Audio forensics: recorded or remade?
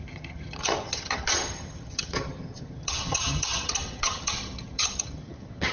remade